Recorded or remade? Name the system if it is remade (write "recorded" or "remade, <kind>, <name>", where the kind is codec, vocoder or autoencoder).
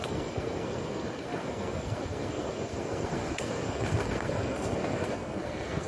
remade, codec, SNAC